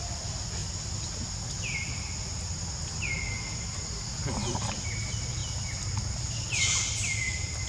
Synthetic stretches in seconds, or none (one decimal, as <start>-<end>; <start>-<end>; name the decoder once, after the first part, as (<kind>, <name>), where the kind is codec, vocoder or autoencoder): 0.0-0.6 (vocoder, BigVGAN v2); 3.0-4.2; 4.7-5.4; 6.6-7.7